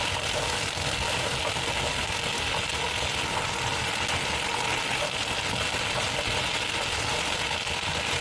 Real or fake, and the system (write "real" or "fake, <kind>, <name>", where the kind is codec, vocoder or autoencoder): real